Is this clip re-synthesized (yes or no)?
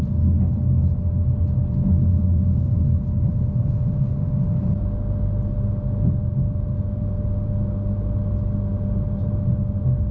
no